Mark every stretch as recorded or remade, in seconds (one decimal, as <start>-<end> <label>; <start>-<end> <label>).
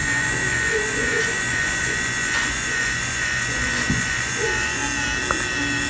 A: 0.0-4.8 remade; 4.8-5.9 recorded